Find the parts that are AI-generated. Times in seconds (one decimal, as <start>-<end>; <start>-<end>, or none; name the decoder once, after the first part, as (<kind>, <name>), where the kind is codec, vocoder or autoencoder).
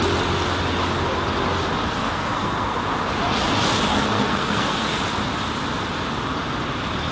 2.0-2.8 (codec, SNAC); 3.9-5.0